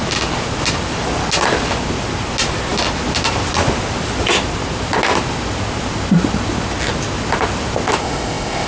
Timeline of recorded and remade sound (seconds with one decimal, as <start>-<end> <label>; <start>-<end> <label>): 0.0-8.0 recorded; 8.0-8.7 remade